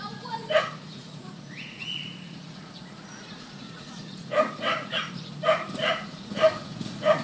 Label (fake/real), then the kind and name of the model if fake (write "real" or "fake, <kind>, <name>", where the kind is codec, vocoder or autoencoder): fake, vocoder, Vocos